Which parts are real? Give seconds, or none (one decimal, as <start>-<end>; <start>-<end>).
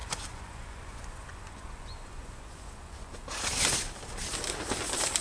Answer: 3.1-5.2